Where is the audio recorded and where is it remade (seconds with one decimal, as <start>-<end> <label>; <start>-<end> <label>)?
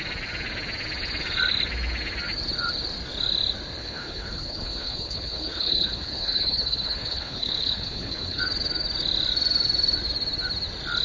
0.0-3.8 recorded; 3.8-8.4 remade; 8.4-11.0 recorded